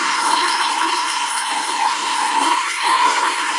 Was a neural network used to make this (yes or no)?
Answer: yes